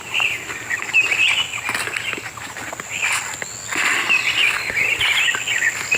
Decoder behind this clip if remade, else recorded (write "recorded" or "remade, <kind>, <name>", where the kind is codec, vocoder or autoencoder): recorded